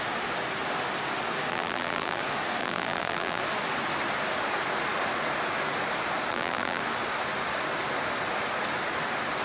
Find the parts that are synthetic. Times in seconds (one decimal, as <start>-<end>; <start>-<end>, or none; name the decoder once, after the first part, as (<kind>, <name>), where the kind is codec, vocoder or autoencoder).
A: 1.5-2.2 (vocoder, BigVGAN v2); 2.6-3.4; 6.3-6.8